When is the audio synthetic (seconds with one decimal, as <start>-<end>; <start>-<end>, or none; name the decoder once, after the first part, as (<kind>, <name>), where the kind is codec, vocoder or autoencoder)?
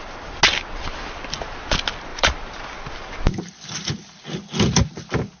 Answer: 2.1-3.5 (vocoder, BigVGAN v2)